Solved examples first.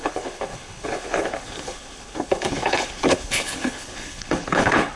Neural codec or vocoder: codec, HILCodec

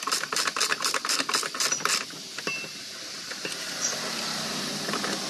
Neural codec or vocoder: none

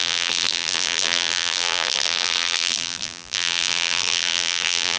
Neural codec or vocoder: vocoder, BigVGAN v2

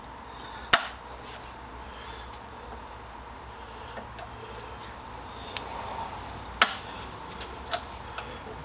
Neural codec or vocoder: none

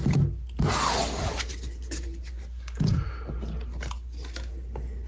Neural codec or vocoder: none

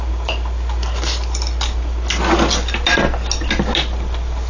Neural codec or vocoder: none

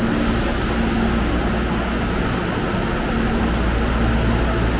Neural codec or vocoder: none